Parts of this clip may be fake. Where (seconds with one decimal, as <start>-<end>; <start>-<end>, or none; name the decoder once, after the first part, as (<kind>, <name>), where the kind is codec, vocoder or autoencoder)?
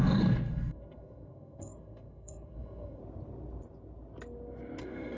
0.0-3.0 (codec, SNAC); 4.8-5.2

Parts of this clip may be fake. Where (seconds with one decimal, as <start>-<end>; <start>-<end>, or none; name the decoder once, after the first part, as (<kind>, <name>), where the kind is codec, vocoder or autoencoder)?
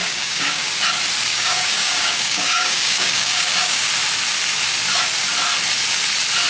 0.0-0.7 (codec, DAC); 1.3-3.9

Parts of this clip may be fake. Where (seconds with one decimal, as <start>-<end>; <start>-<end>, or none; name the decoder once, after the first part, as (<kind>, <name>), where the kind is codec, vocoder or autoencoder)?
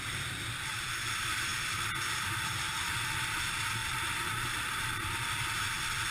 none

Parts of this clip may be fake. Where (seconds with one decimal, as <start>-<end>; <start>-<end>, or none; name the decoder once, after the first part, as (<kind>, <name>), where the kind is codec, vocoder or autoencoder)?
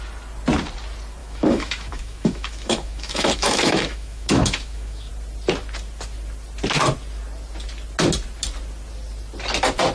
1.2-5.1 (autoencoder, DAC-VAE)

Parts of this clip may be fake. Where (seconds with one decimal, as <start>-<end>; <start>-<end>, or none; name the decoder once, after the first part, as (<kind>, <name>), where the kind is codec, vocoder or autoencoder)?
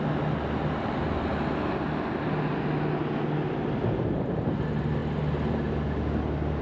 none